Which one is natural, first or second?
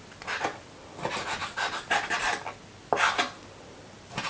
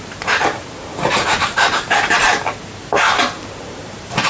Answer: first